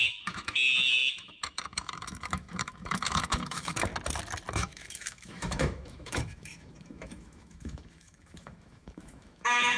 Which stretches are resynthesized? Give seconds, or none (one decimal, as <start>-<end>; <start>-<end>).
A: 0.0-3.9; 4.5-9.8